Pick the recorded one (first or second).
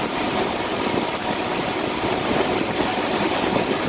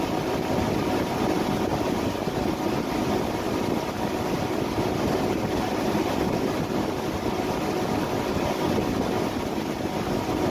second